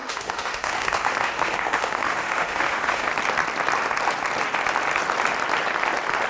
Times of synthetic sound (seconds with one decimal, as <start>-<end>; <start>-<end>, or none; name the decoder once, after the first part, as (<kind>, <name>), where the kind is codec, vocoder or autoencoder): 0.0-3.1 (autoencoder, DAC-VAE)